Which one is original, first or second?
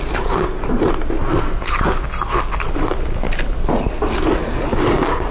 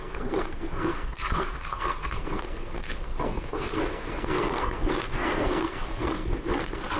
first